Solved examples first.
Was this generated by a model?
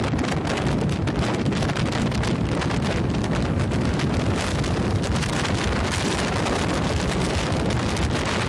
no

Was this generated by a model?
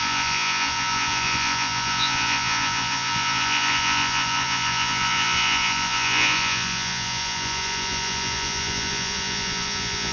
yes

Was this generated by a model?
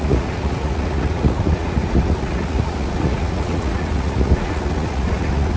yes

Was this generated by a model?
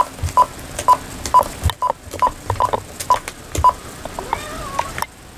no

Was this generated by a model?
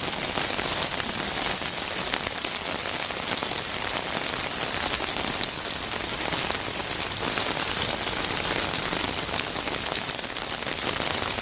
no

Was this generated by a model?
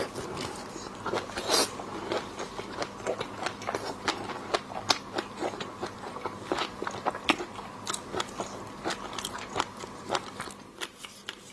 no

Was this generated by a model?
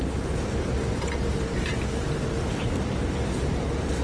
no